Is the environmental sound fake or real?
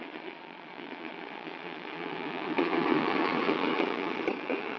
fake